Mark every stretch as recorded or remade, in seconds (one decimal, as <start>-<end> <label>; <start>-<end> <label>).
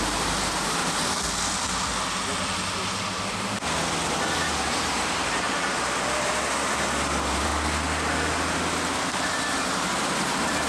0.0-0.8 remade; 0.8-4.7 recorded; 4.7-7.5 remade; 7.5-9.0 recorded; 9.0-10.7 remade